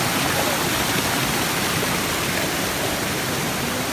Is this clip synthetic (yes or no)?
no